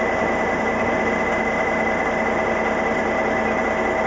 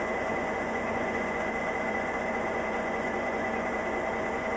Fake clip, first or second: second